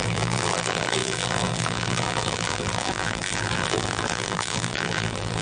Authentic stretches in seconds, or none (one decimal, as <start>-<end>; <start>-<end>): none